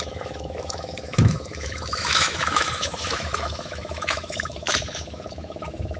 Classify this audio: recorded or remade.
remade